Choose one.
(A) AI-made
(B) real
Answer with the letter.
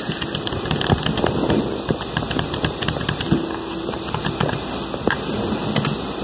B